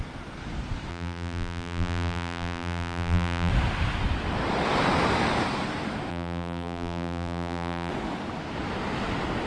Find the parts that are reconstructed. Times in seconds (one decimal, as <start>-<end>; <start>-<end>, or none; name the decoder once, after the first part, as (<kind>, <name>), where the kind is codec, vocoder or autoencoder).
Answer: 0.9-3.5 (vocoder, BigVGAN v2); 6.1-7.9